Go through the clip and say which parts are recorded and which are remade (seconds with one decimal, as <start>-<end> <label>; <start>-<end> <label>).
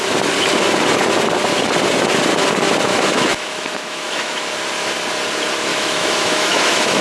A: 0.0-2.9 recorded; 2.9-4.5 remade; 4.5-5.7 recorded; 5.7-7.0 remade